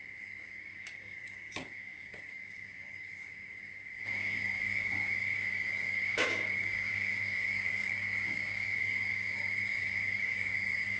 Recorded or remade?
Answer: remade